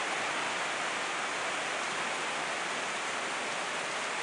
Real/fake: real